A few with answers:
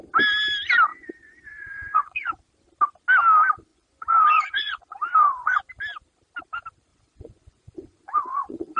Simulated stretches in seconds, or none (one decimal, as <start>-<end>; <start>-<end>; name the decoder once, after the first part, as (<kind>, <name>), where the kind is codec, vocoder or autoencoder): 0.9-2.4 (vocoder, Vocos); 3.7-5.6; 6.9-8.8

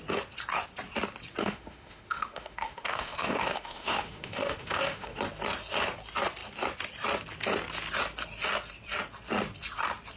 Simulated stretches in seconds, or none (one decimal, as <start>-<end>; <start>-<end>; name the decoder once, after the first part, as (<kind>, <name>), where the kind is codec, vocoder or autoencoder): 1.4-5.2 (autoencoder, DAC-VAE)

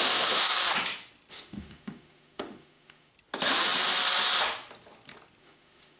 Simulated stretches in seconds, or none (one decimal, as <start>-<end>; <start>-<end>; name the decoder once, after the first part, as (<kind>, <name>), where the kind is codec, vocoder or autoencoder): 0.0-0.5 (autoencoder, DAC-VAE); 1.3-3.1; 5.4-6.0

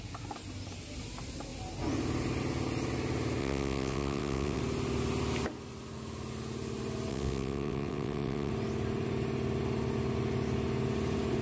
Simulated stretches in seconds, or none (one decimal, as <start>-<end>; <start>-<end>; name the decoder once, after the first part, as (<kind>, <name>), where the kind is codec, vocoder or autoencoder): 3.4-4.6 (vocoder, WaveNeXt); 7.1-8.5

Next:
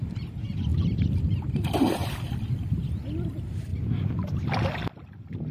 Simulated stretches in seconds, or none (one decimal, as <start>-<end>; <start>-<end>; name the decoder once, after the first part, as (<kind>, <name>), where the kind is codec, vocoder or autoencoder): 0.7-1.5 (vocoder, BigVGAN v2); 2.0-2.8